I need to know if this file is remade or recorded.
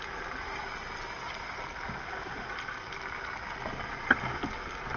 recorded